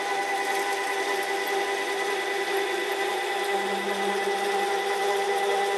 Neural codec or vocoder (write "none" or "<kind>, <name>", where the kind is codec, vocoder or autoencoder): none